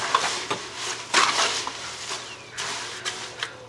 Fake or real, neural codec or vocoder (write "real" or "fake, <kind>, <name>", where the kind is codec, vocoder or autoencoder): fake, vocoder, BigVGAN v2